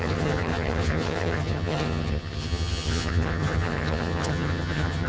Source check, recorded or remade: remade